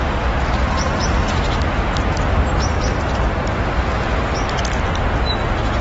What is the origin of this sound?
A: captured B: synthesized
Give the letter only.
A